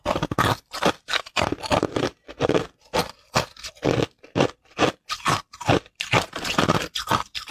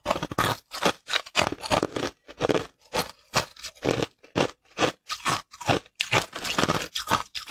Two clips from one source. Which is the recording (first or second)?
second